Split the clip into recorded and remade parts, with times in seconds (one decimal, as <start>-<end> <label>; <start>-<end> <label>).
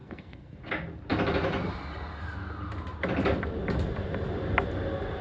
0.0-0.6 remade; 0.6-5.2 recorded